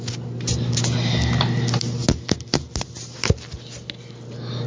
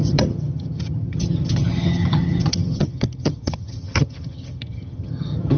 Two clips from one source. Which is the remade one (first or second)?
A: second